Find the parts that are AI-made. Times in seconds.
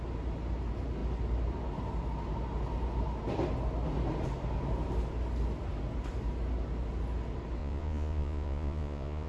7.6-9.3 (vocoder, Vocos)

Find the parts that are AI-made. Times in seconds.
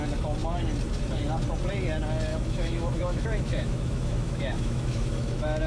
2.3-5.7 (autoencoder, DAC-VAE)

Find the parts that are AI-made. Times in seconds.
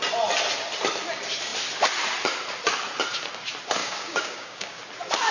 3.8-4.8 (codec, DAC)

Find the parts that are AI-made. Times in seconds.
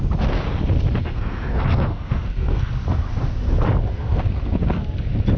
1.0-2.7 (codec, SNAC); 3.9-4.6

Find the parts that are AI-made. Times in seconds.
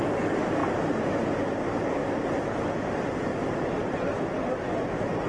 none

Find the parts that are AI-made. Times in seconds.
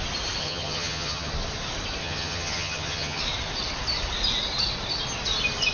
0.4-1.3 (vocoder, HiFi-GAN); 2.0-3.2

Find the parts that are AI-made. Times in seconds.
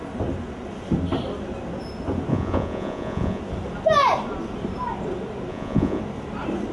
2.3-3.4 (vocoder, Vocos); 5.5-6.0